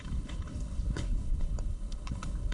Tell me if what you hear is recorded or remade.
remade